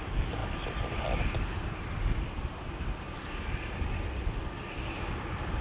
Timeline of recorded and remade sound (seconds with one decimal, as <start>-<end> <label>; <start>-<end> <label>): 0.0-5.6 recorded